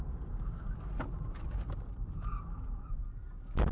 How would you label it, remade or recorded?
recorded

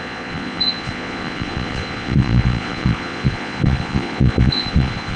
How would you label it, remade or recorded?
remade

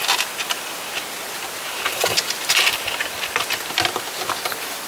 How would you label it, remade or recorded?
recorded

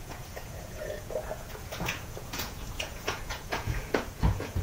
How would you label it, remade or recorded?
remade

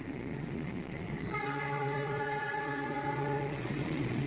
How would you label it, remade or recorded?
remade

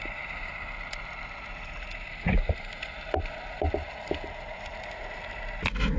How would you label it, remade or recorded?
recorded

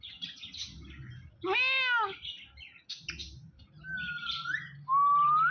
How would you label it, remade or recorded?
recorded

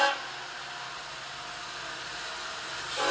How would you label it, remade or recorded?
recorded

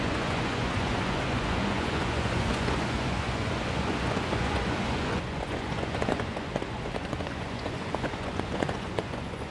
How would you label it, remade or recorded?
remade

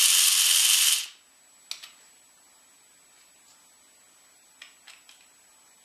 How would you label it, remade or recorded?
recorded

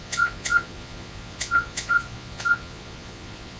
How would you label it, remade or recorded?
remade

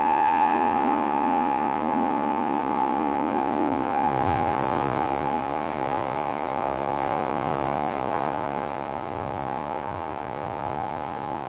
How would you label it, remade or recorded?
remade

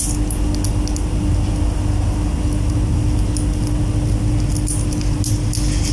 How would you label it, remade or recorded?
recorded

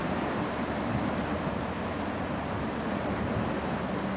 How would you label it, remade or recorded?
recorded